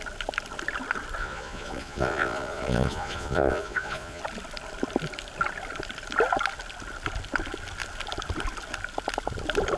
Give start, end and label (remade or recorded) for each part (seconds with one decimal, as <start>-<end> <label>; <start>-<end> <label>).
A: 0.0-1.2 recorded; 1.2-4.2 remade; 4.2-9.8 recorded